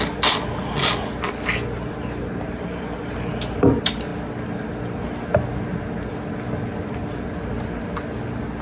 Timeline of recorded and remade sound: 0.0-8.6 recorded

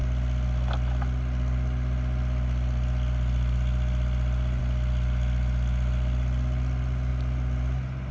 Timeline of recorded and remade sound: 0.0-8.1 recorded

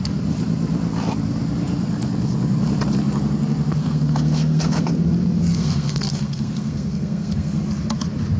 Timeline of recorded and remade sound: 0.0-3.8 recorded; 3.8-4.9 remade; 4.9-5.5 recorded; 5.5-7.6 remade; 7.6-8.4 recorded

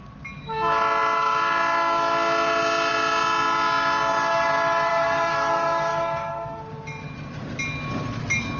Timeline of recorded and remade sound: 0.0-4.9 recorded; 4.9-6.6 remade; 6.6-8.6 recorded

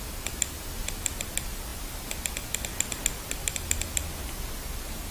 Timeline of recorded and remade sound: 0.0-1.7 remade; 1.7-4.5 recorded; 4.5-5.1 remade